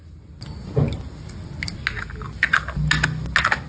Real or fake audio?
real